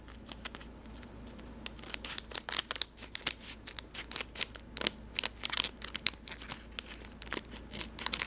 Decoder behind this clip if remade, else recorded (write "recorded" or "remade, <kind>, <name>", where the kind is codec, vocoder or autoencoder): recorded